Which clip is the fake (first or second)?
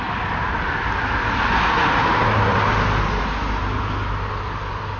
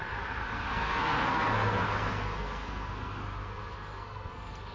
second